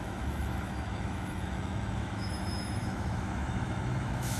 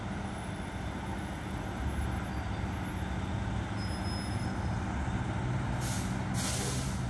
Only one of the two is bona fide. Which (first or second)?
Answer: second